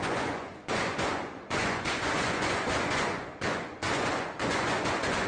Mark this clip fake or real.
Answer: fake